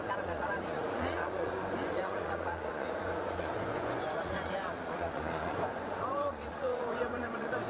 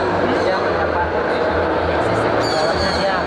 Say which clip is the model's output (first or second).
first